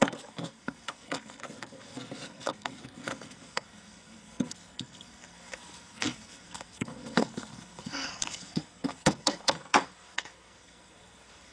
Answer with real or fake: fake